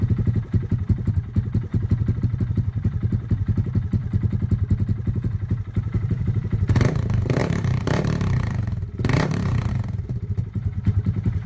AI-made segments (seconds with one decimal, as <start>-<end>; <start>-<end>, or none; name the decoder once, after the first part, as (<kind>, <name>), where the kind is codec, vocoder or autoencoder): 0.0-1.7 (vocoder, BigVGAN v2); 2.2-4.0; 5.6-11.5

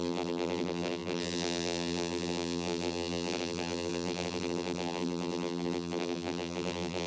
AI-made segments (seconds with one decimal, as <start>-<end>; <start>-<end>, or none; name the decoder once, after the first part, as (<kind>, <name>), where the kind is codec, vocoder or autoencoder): 0.0-7.1 (vocoder, BigVGAN v2)

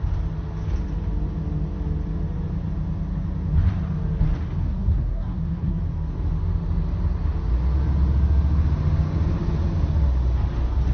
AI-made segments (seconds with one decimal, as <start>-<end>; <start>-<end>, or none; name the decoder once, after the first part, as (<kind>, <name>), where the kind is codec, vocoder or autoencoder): 4.6-5.8 (codec, SNAC)

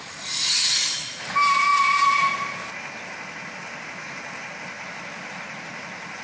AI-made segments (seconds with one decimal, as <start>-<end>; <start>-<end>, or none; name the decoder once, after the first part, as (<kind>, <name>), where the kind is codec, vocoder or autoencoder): none

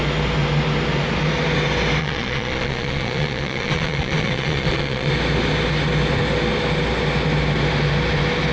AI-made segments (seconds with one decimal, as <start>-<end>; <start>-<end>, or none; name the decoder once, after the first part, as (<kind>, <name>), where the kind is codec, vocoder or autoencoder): 2.0-5.1 (vocoder, Vocos)

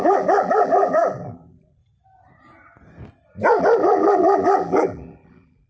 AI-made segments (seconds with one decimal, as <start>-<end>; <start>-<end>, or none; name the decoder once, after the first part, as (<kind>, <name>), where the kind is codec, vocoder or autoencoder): 0.0-1.8 (vocoder, BigVGAN v2); 3.6-5.7

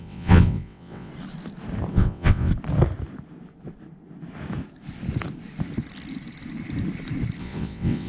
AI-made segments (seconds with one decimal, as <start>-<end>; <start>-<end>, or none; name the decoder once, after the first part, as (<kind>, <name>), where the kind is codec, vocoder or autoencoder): 0.0-1.1 (vocoder, WaveNeXt); 1.9-2.5; 7.4-8.1

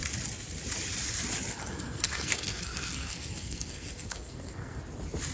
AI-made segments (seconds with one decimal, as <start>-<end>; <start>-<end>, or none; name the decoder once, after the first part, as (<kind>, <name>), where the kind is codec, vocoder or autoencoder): 1.6-4.8 (codec, SNAC)